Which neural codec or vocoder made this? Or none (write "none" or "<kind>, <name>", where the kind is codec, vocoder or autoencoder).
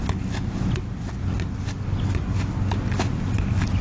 none